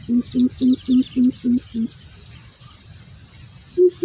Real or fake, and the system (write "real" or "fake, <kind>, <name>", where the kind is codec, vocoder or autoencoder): real